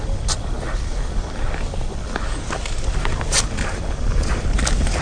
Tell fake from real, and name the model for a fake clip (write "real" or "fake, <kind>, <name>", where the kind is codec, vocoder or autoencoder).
real